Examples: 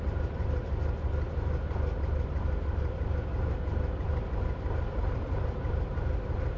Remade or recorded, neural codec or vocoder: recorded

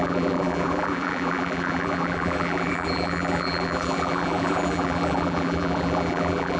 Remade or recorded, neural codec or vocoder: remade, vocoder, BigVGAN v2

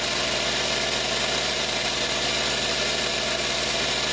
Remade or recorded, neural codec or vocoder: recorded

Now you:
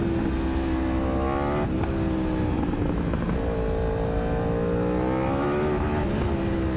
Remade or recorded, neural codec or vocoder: recorded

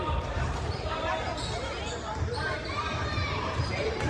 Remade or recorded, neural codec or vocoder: remade, vocoder, BigVGAN v2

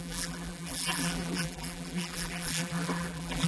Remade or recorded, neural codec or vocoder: remade, vocoder, BigVGAN v2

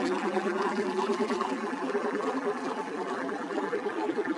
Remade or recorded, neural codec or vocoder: remade, vocoder, BigVGAN v2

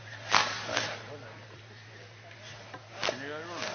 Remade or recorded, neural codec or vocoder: recorded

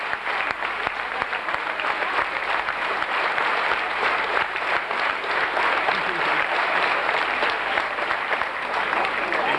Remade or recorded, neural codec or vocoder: remade, vocoder, BigVGAN v2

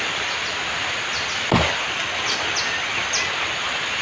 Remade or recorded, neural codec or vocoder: recorded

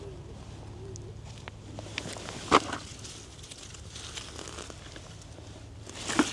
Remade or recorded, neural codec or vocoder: recorded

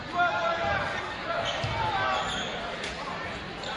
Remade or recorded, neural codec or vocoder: recorded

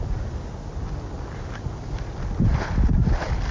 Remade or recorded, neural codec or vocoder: recorded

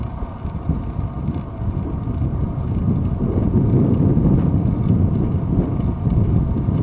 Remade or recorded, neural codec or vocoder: recorded